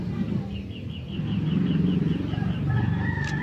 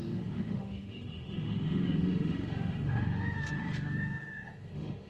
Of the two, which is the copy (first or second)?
second